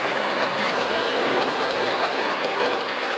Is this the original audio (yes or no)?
no